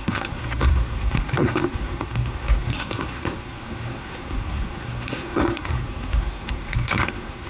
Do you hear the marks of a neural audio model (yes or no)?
yes